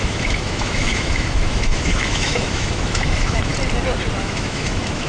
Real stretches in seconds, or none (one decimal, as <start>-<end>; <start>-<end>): 3.5-4.2